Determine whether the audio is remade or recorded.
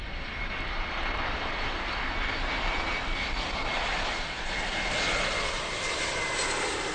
recorded